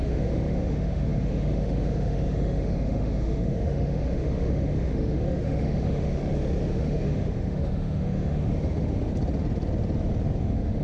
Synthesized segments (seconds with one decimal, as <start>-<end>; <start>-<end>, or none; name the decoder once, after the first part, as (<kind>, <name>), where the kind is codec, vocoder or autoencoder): 0.0-6.2 (autoencoder, DAC-VAE); 6.7-9.1; 10.4-10.8